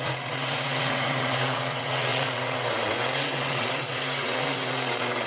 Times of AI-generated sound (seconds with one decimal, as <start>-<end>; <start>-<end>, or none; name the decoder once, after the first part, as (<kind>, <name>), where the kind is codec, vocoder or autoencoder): 0.0-5.3 (vocoder, WaveNeXt)